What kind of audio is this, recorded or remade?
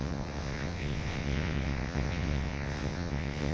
remade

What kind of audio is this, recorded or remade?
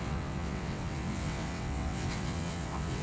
remade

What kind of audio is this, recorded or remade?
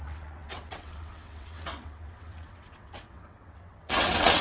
remade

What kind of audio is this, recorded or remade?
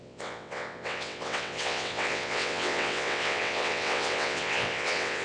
remade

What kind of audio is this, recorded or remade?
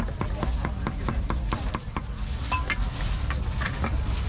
recorded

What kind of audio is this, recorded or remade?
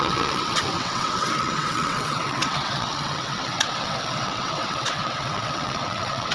remade